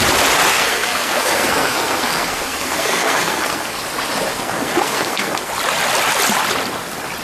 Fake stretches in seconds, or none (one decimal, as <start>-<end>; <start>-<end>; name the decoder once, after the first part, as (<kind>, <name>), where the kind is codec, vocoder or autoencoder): 0.5-3.8 (codec, SNAC); 4.3-5.5

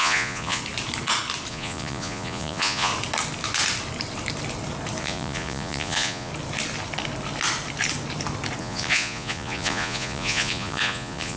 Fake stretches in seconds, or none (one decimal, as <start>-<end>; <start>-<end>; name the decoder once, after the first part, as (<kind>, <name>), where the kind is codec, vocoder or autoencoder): 0.0-0.6 (vocoder, Vocos); 1.5-2.9; 5.0-6.3; 8.6-11.4